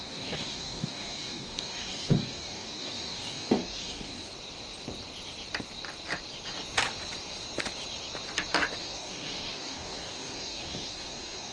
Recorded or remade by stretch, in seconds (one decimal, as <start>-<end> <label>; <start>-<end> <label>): 0.0-4.3 remade; 4.3-8.8 recorded; 8.8-11.5 remade